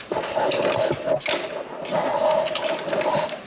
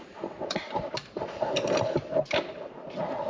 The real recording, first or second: first